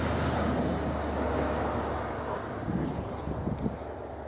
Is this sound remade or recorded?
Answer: recorded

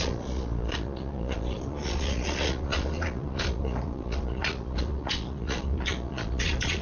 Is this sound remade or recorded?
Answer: remade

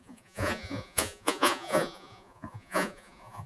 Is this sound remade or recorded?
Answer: remade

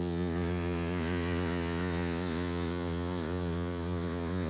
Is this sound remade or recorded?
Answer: remade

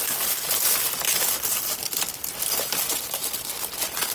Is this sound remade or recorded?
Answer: recorded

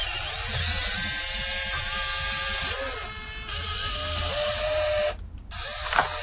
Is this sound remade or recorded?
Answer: recorded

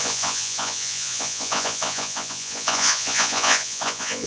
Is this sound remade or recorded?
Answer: remade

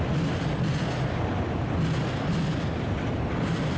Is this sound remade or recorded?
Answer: recorded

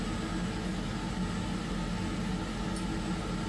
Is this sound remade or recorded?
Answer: recorded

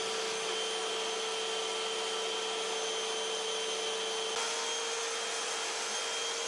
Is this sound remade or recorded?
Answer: recorded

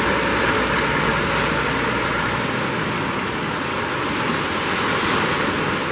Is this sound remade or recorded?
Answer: recorded